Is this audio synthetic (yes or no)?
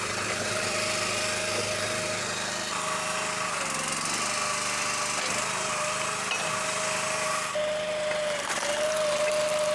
no